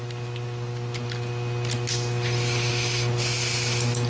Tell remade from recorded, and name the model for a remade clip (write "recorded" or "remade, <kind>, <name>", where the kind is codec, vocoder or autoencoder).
recorded